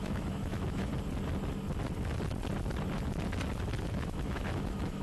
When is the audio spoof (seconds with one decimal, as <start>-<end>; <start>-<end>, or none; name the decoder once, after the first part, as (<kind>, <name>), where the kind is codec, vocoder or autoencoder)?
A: 0.0-0.9 (autoencoder, DAC-VAE); 3.9-5.0

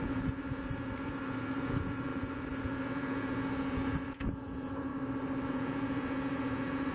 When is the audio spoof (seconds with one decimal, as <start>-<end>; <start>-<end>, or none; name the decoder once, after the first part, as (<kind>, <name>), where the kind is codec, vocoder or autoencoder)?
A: 0.0-4.9 (vocoder, Vocos); 5.5-6.9

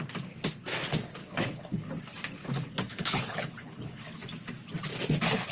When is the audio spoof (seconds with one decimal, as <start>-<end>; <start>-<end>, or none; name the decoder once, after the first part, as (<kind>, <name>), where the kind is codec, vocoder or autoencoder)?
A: 1.2-1.9 (codec, HILCodec); 2.4-4.2

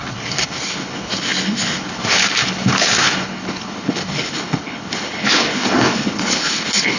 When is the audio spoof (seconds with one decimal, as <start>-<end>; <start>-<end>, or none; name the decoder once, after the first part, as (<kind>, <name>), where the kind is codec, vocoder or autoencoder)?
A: 0.0-7.0 (codec, HILCodec)

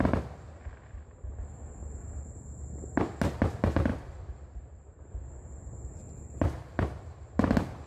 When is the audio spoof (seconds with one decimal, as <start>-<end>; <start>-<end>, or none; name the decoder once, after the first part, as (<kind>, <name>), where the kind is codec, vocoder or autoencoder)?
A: 3.9-7.0 (vocoder, BigVGAN v2)